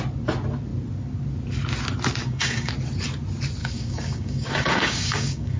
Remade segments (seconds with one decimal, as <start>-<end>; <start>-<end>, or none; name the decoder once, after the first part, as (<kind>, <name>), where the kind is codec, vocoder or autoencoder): 2.2-2.7 (codec, DAC); 3.6-5.6